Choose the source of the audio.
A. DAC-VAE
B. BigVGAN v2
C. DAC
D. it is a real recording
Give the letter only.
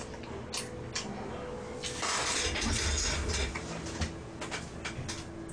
D